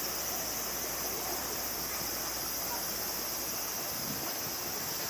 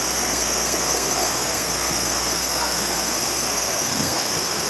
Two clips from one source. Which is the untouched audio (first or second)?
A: first